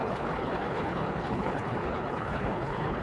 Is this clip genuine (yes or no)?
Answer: no